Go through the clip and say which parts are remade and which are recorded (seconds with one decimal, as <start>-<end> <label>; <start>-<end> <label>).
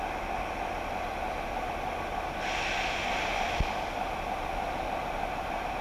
0.0-3.1 recorded; 3.1-3.6 remade; 3.6-5.8 recorded